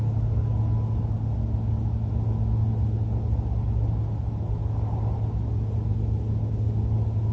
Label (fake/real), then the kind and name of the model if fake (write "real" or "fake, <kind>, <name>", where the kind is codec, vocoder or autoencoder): real